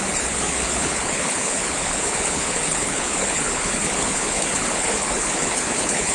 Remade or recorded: remade